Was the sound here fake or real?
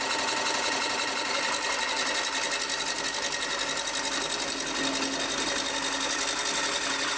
real